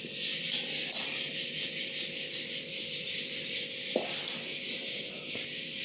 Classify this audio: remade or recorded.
recorded